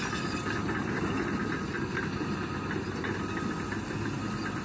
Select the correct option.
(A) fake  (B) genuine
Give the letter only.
B